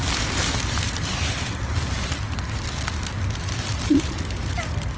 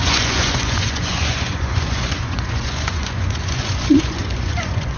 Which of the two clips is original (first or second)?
first